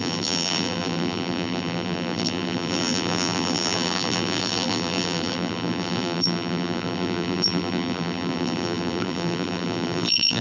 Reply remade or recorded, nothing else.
remade